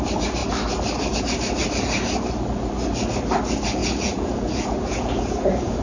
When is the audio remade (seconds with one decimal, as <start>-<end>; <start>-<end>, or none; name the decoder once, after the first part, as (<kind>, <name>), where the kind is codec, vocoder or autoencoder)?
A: 3.8-5.8 (vocoder, Vocos)